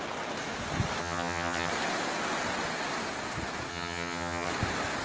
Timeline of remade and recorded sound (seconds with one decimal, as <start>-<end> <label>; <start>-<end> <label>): 0.0-1.0 recorded; 1.0-1.7 remade; 1.7-3.7 recorded; 3.7-4.5 remade; 4.5-5.0 recorded